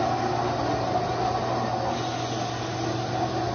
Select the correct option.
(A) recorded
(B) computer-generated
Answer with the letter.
A